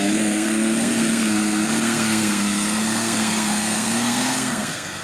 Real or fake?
fake